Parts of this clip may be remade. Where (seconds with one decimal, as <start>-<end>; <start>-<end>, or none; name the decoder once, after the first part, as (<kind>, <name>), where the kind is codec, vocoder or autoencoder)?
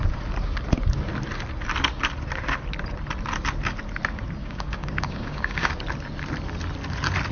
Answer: 4.4-5.7 (codec, DAC)